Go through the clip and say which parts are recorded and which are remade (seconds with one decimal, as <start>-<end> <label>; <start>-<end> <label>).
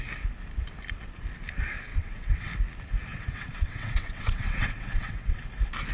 0.0-1.9 recorded; 1.9-2.5 remade; 2.5-3.1 recorded; 3.1-5.4 remade; 5.4-5.9 recorded